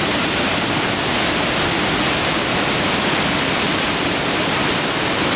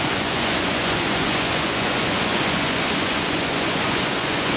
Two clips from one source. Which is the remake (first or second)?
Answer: second